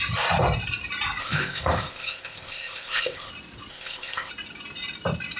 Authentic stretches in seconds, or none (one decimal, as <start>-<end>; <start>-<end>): 0.0-1.2; 3.3-3.7; 4.3-5.4